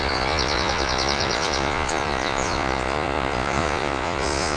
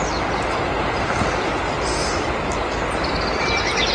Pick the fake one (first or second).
first